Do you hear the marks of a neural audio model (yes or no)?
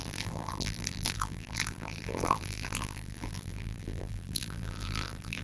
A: yes